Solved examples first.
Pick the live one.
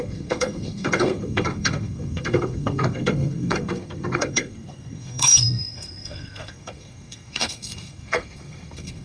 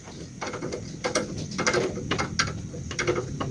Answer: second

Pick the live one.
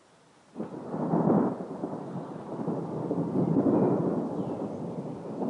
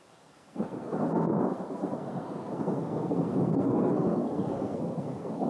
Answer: first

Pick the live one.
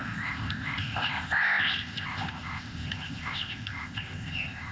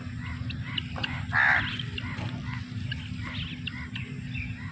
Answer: second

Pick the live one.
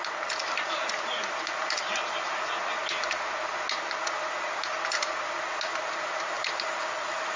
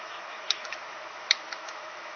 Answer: first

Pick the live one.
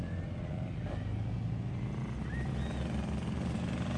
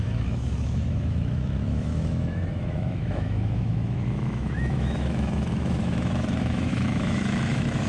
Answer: first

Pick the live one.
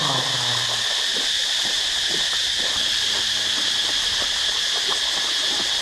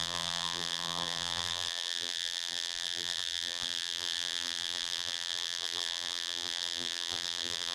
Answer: first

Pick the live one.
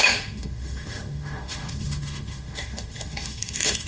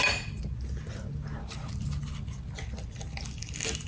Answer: second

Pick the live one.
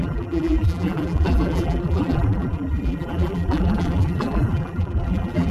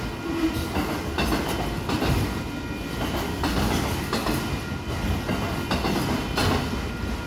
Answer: second